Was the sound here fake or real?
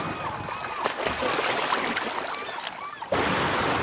real